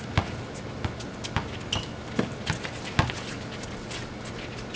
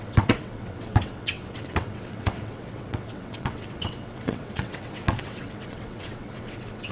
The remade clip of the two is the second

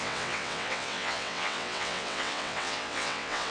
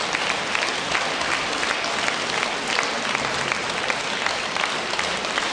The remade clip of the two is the first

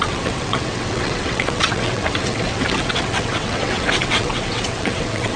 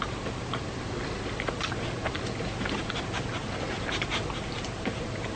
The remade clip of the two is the first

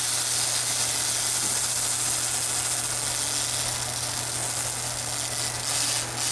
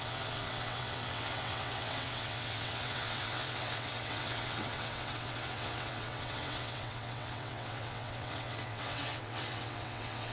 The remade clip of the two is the second